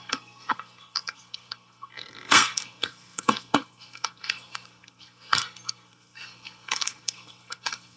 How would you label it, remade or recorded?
remade